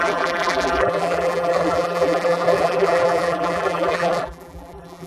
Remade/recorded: remade